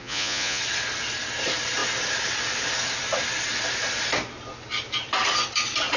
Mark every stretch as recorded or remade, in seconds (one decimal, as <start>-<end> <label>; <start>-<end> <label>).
0.0-0.6 remade; 0.6-6.0 recorded